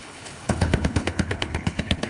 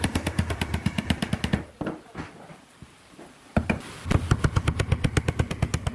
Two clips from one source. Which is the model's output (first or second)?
first